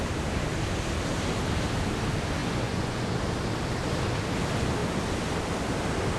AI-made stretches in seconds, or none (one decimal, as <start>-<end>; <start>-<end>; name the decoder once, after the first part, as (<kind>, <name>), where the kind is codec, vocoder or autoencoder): 2.4-3.1 (vocoder, Vocos)